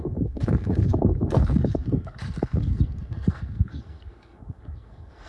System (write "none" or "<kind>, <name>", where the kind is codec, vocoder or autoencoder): codec, SNAC